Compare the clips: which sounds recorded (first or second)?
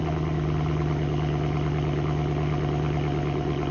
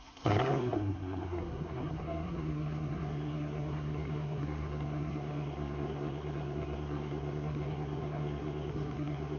first